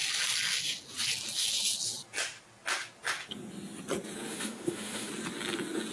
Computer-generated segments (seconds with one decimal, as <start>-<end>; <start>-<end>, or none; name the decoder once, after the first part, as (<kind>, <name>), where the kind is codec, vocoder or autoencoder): 4.3-5.1 (autoencoder, DAC-VAE)